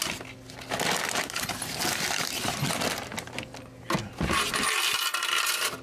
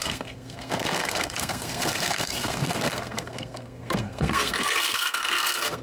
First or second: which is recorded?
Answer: first